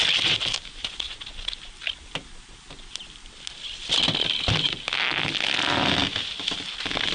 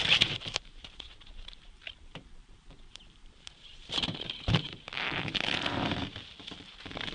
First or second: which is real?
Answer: first